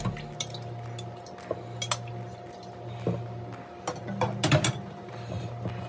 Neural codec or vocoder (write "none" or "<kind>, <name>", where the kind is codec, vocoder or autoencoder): none